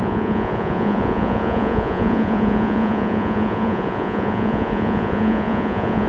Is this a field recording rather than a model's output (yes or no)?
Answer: no